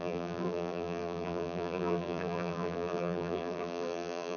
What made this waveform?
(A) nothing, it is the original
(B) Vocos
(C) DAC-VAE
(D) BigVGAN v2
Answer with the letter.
D